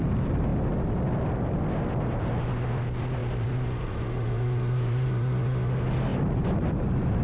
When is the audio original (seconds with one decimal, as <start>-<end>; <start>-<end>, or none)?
0.0-3.2; 5.4-6.1